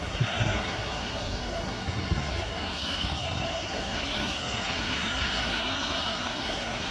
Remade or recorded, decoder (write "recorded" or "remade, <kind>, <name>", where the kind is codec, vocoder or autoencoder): remade, codec, SNAC